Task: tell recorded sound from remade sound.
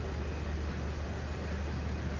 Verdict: recorded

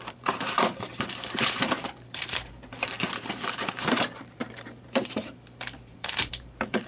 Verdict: remade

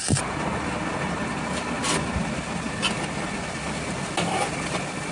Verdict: recorded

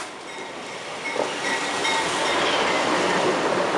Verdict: remade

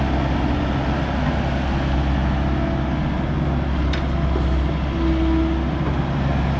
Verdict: recorded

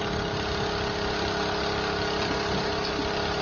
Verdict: recorded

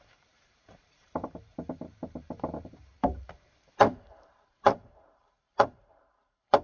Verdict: remade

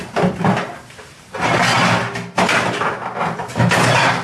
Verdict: recorded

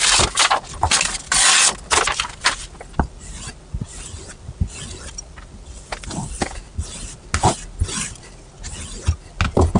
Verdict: recorded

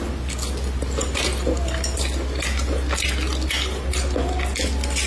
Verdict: recorded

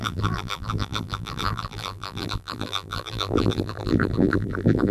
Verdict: remade